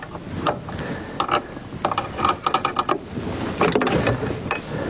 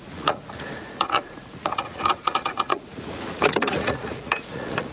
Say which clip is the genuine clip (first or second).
first